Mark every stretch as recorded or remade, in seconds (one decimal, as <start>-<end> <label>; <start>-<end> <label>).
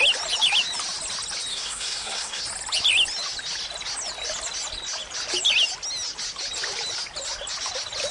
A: 0.0-1.5 recorded; 1.5-2.4 remade; 2.4-8.1 recorded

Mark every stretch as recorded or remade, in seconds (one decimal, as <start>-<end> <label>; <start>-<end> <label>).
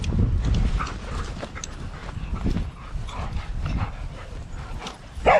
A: 0.0-5.4 recorded